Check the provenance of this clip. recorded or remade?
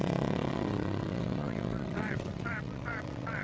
remade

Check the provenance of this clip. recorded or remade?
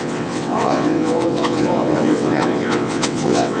remade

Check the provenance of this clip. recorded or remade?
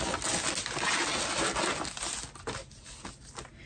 recorded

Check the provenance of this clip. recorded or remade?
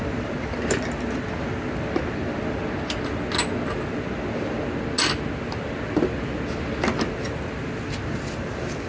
recorded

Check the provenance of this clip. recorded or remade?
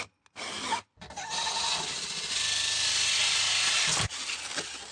recorded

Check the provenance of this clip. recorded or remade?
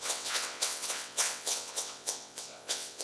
remade